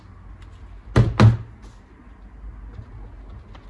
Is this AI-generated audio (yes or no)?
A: no